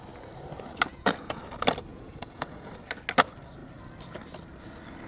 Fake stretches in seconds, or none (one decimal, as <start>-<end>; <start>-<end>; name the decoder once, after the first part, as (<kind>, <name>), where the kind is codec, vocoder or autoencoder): 0.9-1.4 (vocoder, Vocos); 1.9-2.7